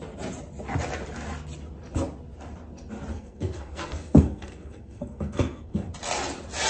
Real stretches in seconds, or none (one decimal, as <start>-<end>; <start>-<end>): 0.0-3.1; 5.9-6.7